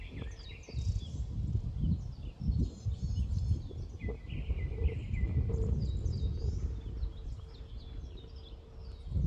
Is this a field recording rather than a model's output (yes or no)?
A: yes